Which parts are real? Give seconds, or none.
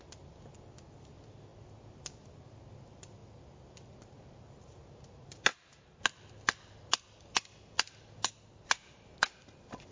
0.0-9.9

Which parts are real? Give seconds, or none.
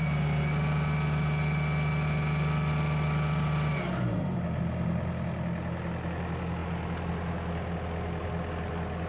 0.0-9.1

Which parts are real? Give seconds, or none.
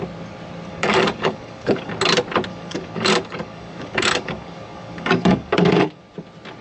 0.0-0.7; 1.9-2.5; 6.0-6.6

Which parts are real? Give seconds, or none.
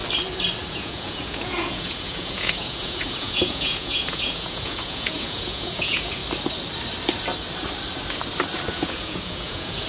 0.0-0.7; 6.2-8.7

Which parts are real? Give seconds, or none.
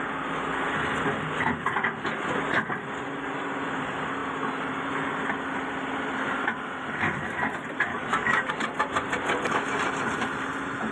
0.0-7.9; 8.5-10.9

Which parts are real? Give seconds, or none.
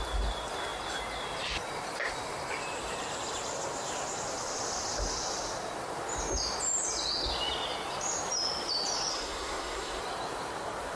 0.0-9.1; 10.0-11.0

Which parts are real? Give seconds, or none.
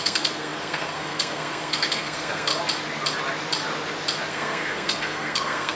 2.5-4.3